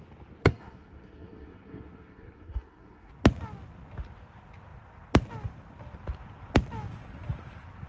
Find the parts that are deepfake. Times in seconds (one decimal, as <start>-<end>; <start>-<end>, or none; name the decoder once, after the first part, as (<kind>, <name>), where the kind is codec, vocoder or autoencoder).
0.4-3.1 (codec, SNAC)